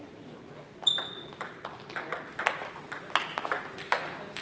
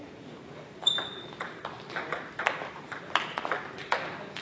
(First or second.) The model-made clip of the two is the second